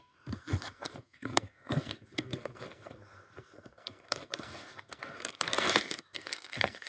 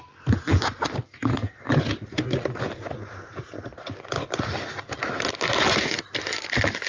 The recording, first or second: second